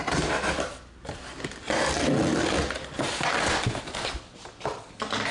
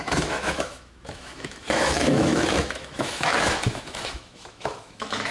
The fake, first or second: second